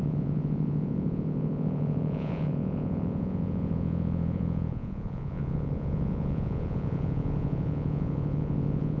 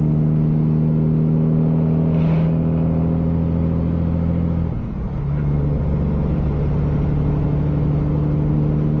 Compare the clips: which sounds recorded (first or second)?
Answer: second